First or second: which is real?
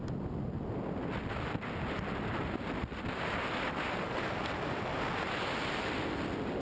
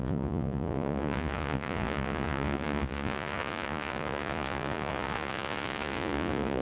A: first